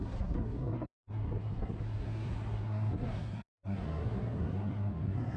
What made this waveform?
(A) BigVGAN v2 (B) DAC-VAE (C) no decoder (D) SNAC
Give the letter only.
D